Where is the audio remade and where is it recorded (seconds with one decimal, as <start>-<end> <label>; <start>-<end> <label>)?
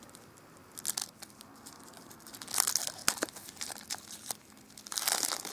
0.0-5.5 recorded